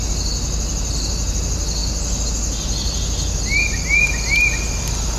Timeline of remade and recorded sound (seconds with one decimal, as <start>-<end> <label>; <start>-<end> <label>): 0.0-5.2 recorded